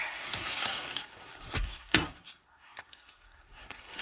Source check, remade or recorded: remade